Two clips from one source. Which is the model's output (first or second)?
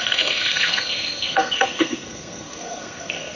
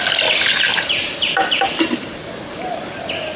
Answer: first